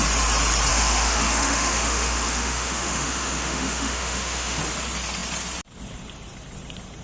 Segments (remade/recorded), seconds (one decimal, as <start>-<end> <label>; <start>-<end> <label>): 0.0-0.7 recorded; 0.7-4.6 remade; 4.6-7.0 recorded